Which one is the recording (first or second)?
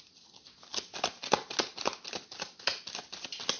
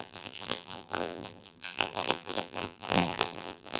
first